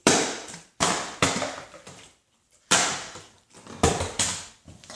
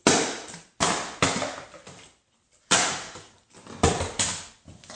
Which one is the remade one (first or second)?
first